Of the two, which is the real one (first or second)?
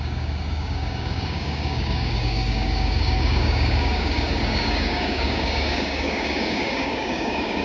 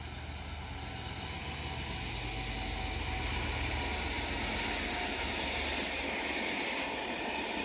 second